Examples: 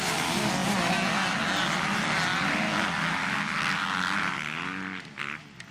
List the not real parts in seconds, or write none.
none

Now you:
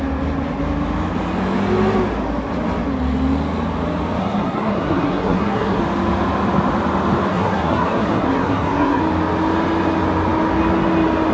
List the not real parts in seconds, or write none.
4.2-5.8 (codec, SNAC); 7.3-9.0

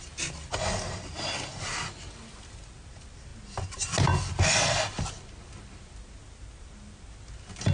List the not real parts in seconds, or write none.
none

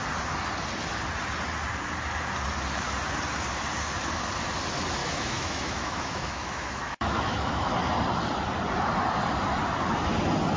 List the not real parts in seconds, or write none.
5.0-7.7 (autoencoder, DAC-VAE)

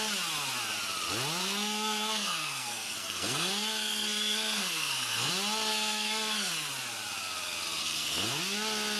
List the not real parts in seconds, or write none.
1.4-5.3 (codec, SNAC); 5.7-6.5; 7.8-8.4

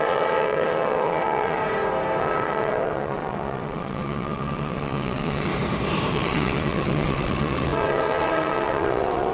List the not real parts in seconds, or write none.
0.0-1.6 (vocoder, WaveNeXt); 2.2-5.5; 6.1-9.3